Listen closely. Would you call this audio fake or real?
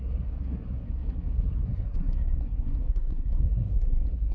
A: fake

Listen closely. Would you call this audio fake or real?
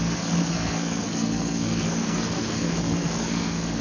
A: fake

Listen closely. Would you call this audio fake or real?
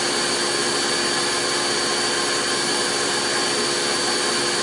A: real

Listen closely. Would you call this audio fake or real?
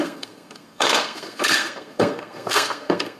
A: fake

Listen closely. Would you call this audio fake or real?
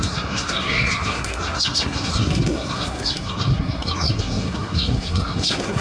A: fake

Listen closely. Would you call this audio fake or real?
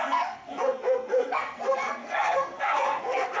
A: fake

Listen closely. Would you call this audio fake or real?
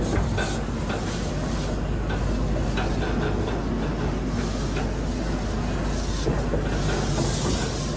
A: real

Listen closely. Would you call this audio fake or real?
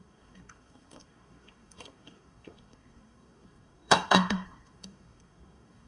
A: fake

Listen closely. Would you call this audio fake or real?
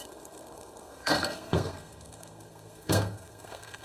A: fake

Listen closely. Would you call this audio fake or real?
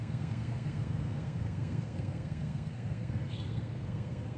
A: fake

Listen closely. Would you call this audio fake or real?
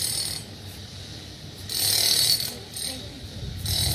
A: real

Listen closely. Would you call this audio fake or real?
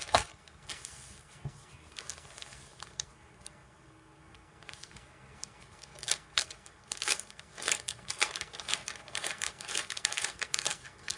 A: fake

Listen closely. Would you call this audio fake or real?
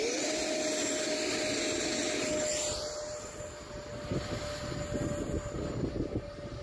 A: real